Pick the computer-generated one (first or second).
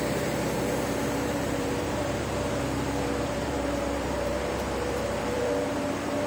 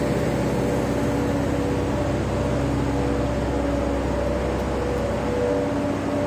first